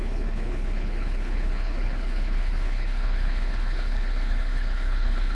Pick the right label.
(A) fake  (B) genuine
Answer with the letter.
A